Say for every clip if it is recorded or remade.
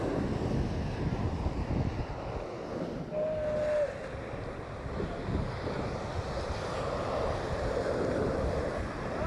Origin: recorded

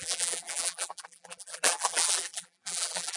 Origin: remade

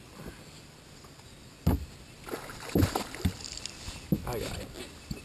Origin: recorded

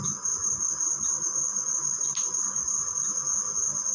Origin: recorded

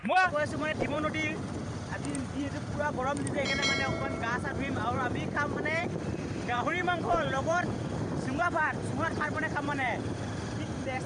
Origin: remade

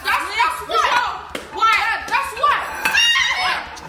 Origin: recorded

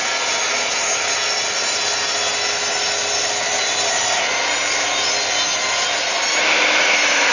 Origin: recorded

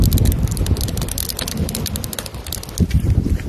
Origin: recorded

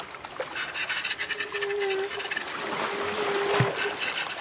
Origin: recorded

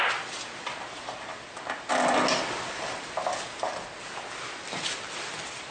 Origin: recorded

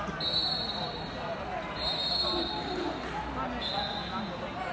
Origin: recorded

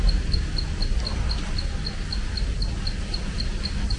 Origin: recorded